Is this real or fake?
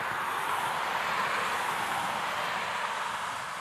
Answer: real